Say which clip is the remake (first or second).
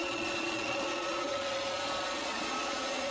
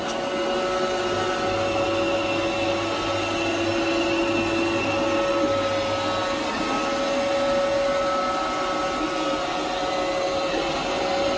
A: first